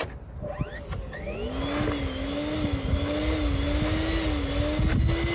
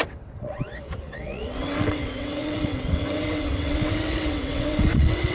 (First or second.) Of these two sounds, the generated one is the second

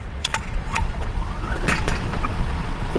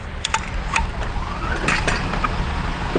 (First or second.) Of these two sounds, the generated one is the first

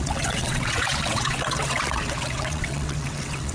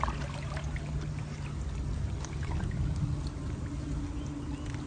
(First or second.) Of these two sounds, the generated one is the first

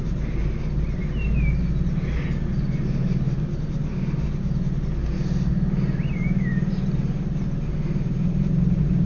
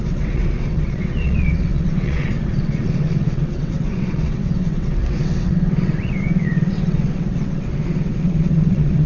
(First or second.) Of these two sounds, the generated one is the second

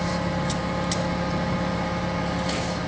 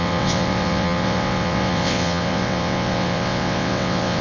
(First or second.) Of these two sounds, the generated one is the second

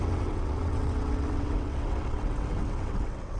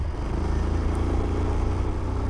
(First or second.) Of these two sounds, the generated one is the first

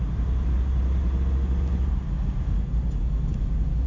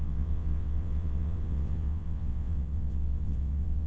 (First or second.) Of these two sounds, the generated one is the second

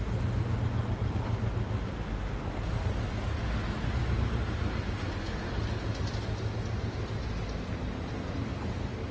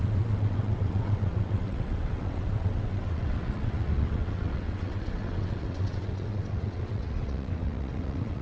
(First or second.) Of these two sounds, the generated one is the second